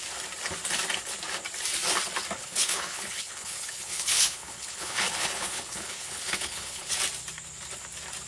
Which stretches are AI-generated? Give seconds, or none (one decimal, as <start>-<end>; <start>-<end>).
2.4-6.9